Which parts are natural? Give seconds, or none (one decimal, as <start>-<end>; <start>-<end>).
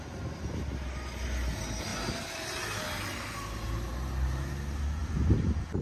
0.0-5.0